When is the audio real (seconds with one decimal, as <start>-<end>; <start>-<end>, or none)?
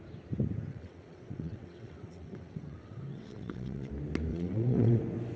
0.0-0.7; 3.9-4.3; 5.0-5.4